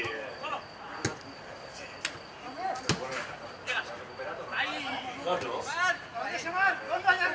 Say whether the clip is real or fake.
real